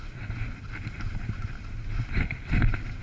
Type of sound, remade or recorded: recorded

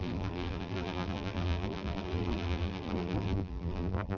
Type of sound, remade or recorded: remade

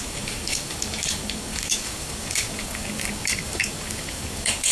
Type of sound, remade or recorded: remade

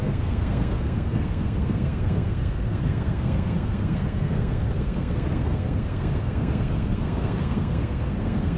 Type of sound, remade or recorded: remade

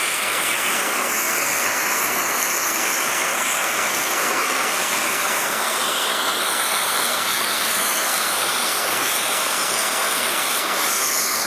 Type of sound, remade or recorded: remade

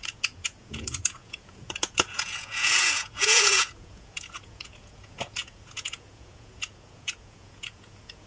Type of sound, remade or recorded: remade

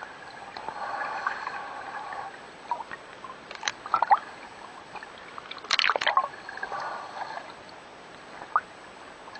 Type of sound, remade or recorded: recorded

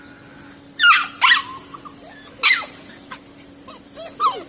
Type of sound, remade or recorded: recorded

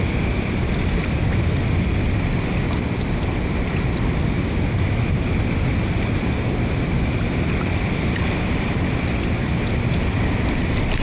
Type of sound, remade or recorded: recorded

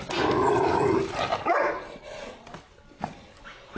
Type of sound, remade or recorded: recorded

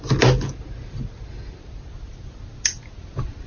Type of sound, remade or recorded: recorded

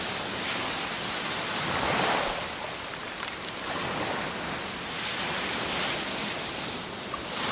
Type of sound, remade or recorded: recorded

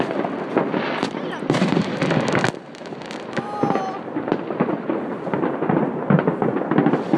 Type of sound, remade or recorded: recorded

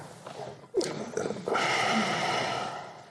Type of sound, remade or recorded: recorded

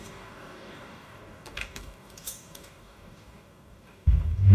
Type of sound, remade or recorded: remade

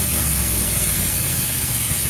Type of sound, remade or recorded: remade